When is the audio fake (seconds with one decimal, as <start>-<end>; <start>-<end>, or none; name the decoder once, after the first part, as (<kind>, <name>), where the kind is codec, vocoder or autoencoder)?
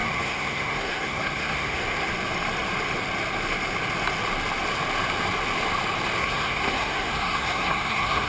0.0-2.1 (codec, SNAC); 6.2-8.3